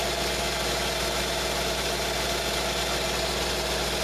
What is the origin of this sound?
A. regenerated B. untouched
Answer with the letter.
B